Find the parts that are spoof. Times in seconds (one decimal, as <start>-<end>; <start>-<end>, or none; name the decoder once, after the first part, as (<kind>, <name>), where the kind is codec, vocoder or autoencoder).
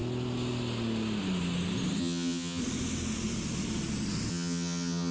2.0-2.6 (vocoder, HiFi-GAN); 4.3-5.1